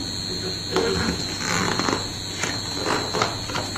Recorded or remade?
recorded